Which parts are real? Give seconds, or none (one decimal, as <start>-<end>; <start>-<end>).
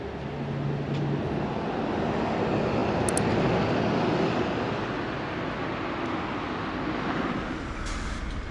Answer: 0.0-8.5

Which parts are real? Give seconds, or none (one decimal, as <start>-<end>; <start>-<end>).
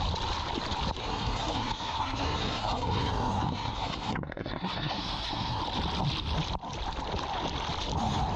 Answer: 0.0-1.0; 5.6-8.4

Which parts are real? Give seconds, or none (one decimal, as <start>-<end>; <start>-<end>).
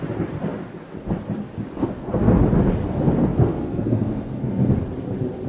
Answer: 0.0-1.8; 2.4-3.3; 4.7-5.5